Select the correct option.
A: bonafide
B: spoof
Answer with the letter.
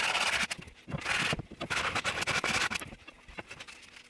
A